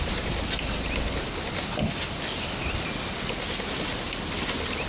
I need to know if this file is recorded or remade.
recorded